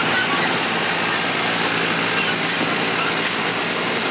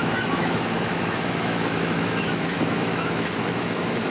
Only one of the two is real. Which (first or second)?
first